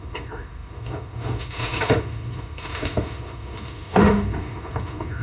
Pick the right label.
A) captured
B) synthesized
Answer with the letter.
B